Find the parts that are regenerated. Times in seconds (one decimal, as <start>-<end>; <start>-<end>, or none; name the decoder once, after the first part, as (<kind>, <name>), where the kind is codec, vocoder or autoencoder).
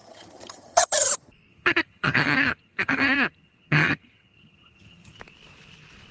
0.0-1.1 (vocoder, HiFi-GAN); 1.5-5.2